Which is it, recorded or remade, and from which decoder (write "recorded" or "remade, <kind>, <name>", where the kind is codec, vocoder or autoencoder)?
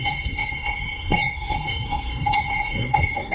remade, codec, SNAC